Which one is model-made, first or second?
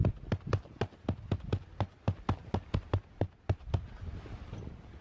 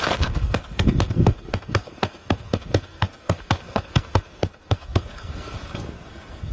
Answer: second